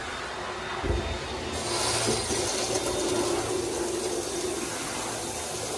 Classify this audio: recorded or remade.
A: recorded